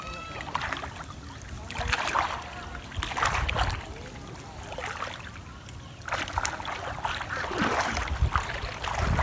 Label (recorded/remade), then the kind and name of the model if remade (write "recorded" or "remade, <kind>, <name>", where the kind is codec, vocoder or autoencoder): recorded